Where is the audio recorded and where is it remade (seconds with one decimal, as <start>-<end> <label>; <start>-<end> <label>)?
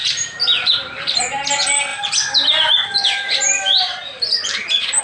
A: 0.0-1.2 remade; 1.2-1.9 recorded; 1.9-5.0 remade